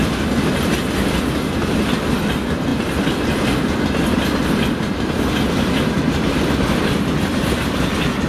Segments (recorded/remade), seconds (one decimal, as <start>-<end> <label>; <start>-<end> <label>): 0.0-8.3 recorded